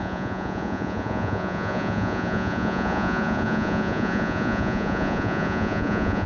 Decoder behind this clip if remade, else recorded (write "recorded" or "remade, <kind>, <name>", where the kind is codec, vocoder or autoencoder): remade, vocoder, Vocos